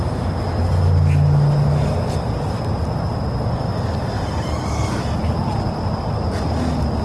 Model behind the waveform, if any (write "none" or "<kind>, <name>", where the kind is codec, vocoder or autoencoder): none